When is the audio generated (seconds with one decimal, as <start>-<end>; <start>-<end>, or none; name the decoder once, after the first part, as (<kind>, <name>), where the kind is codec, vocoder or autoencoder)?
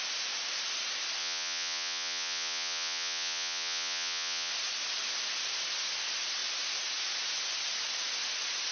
1.2-4.5 (vocoder, Vocos)